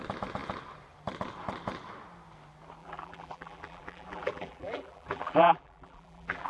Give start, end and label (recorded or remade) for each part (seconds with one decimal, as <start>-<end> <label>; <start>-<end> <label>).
0.0-2.8 recorded; 2.8-6.5 remade